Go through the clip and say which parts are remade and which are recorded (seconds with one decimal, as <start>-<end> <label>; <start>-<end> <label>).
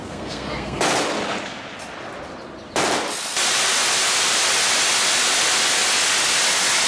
0.0-0.8 remade; 0.8-6.9 recorded